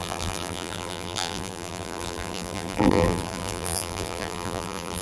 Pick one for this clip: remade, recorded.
remade